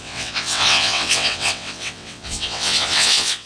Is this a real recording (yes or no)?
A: no